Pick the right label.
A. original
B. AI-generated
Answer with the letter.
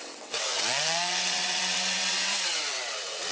B